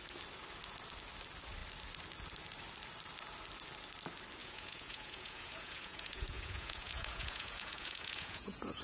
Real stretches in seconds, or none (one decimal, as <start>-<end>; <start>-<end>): 0.0-4.4

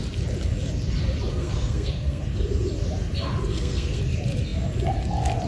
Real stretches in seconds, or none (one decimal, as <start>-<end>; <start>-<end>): 0.0-1.3; 2.2-3.5; 4.0-5.5

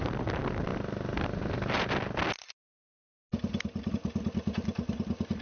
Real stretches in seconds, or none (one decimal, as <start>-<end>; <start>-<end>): 0.0-5.4

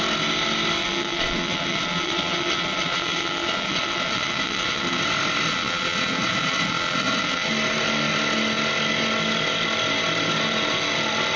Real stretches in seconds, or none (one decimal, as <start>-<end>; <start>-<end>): 0.0-0.8; 5.0-5.5; 7.5-11.4

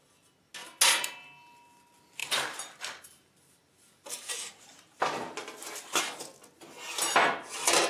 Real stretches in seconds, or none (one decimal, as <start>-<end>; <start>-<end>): 0.0-2.2; 6.0-7.9

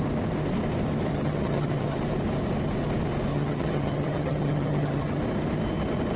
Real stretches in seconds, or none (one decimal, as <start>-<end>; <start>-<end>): 0.0-1.1; 2.0-3.3; 5.2-6.2